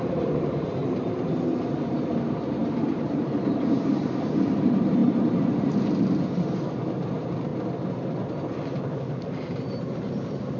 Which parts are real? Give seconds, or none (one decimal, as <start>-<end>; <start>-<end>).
0.8-1.5; 7.5-8.8